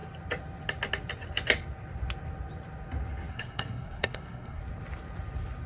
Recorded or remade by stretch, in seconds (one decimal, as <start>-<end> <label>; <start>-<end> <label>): 0.0-3.3 recorded; 3.3-4.6 remade; 4.6-5.7 recorded